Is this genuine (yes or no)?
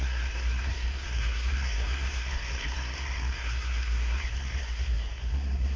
no